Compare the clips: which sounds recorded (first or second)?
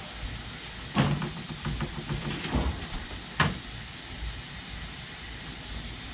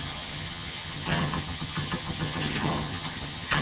first